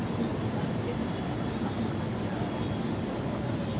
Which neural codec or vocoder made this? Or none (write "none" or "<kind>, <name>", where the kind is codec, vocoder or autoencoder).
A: none